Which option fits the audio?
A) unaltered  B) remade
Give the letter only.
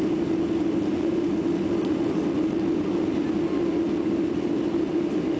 A